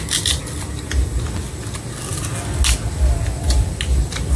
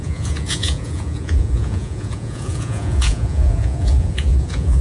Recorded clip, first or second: first